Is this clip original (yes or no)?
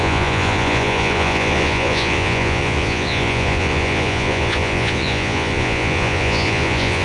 no